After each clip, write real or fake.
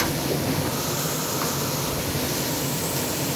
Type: real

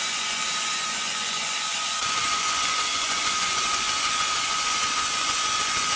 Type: fake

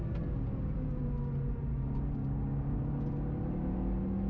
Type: real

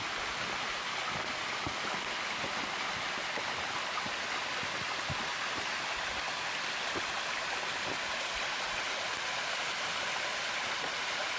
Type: real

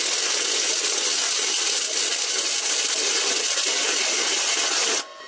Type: real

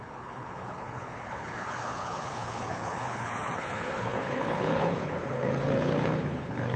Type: fake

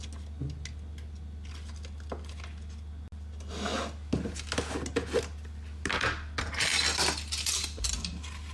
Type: real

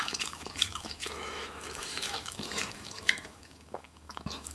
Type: fake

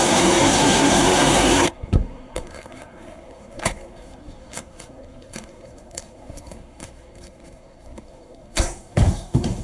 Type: fake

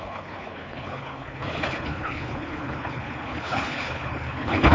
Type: fake